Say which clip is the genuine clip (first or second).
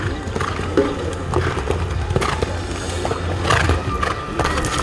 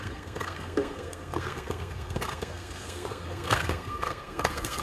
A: first